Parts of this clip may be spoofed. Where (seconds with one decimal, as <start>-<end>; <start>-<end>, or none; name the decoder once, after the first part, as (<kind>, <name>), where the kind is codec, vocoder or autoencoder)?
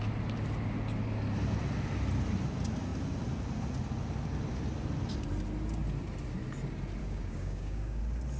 7.0-8.0 (codec, DAC)